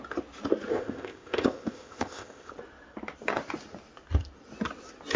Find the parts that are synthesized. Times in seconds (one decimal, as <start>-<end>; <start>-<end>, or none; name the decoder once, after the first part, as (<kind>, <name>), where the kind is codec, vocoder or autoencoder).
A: 0.7-2.5 (codec, ZipCodec)